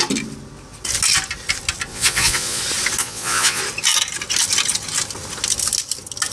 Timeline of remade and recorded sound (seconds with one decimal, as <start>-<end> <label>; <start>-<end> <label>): 0.0-1.9 recorded; 1.9-2.6 remade; 2.6-3.0 recorded; 3.0-3.6 remade; 3.6-6.3 recorded